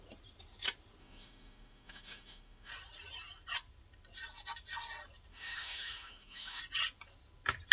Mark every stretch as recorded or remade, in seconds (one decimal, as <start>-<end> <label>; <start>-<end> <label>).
0.0-1.0 recorded; 1.0-2.7 remade; 2.7-5.3 recorded; 5.3-6.6 remade; 6.6-7.7 recorded